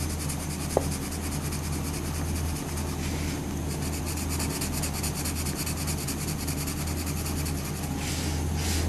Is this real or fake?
real